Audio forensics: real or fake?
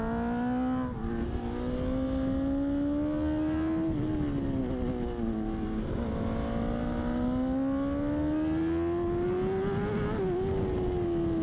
real